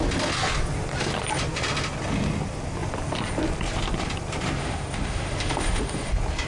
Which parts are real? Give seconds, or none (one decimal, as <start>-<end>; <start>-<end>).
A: 0.0-4.6; 6.1-6.5